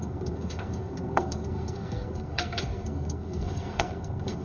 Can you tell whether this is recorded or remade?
remade